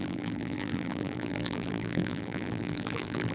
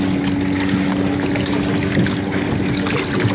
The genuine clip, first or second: second